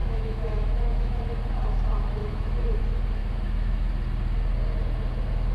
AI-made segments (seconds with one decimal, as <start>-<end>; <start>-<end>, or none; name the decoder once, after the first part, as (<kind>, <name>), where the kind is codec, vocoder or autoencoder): 0.0-1.2 (autoencoder, DAC-VAE); 2.2-2.8; 3.2-3.9